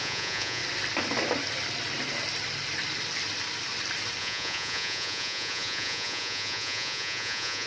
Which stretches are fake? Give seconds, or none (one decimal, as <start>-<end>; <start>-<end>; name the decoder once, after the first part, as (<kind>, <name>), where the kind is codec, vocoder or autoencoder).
0.0-0.6 (vocoder, Vocos); 4.2-7.7

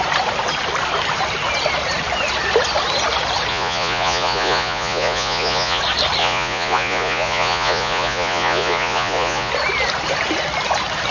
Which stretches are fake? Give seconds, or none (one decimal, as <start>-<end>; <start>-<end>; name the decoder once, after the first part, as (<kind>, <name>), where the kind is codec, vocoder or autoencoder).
3.5-5.8 (vocoder, Vocos); 6.2-9.5

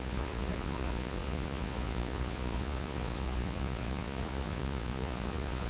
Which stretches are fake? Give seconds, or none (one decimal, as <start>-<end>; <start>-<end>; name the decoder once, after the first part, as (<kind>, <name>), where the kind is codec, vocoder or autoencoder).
0.0-5.7 (vocoder, Vocos)

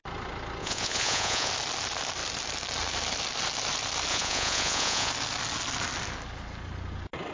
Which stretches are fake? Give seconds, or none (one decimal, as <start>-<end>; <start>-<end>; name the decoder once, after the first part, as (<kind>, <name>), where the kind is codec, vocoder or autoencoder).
0.6-1.5 (vocoder, Vocos); 4.1-5.1

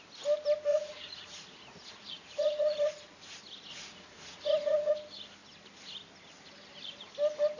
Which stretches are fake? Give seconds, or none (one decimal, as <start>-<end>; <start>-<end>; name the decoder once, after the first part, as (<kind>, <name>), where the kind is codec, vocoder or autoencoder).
0.7-2.9 (vocoder, Vocos); 3.7-4.9

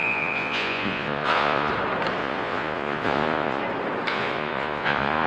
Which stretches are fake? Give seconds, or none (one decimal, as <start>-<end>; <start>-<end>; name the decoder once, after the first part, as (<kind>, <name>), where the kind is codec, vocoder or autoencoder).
0.0-1.7 (vocoder, Vocos); 2.2-3.6; 4.1-5.3